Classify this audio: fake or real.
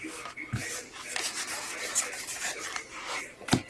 real